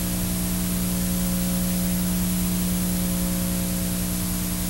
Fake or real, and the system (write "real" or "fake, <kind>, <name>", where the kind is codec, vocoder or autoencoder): real